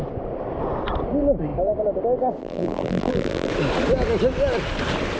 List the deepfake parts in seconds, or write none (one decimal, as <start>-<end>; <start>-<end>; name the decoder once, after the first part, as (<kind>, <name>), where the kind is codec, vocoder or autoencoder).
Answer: 2.4-3.5 (vocoder, BigVGAN v2)